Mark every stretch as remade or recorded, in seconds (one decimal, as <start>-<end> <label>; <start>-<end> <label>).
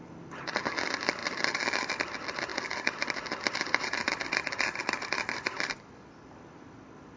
0.0-1.2 recorded; 1.2-1.9 remade; 1.9-2.5 recorded; 2.5-5.7 remade; 5.7-7.2 recorded